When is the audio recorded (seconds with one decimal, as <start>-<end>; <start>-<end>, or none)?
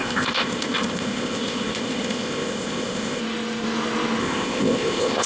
3.2-4.2